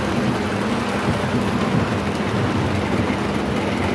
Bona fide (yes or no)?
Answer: yes